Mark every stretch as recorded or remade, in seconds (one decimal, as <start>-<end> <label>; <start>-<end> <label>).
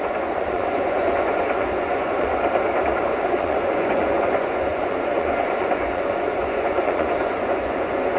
0.0-2.4 remade; 2.4-3.0 recorded; 3.0-8.2 remade